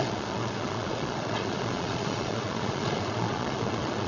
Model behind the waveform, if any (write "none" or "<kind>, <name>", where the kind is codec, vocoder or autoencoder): vocoder, Vocos